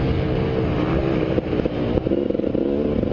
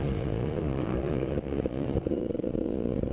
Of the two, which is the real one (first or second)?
first